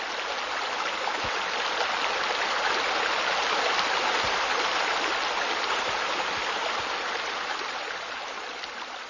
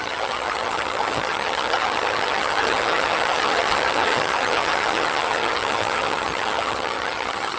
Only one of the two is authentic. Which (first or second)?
first